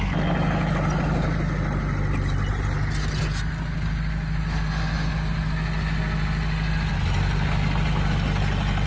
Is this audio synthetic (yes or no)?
no